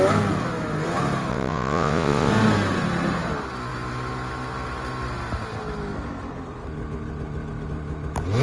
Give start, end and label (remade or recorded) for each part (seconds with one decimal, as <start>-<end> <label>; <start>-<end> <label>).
0.0-1.3 recorded; 1.3-2.3 remade; 2.3-8.4 recorded